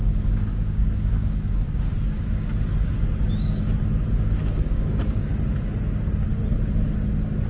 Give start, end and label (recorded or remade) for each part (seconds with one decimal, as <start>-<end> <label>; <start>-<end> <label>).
0.0-3.0 remade; 3.0-4.4 recorded; 4.4-5.3 remade; 5.3-7.5 recorded